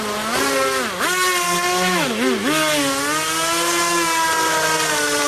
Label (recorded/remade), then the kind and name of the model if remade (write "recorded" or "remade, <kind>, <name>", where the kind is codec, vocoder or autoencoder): recorded